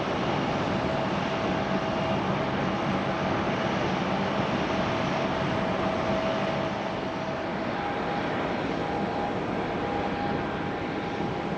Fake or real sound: real